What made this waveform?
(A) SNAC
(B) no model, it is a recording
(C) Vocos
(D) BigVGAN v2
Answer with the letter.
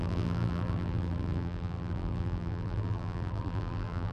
D